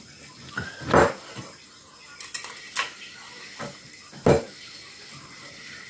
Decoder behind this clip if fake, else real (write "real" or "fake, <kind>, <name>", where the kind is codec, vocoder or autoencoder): real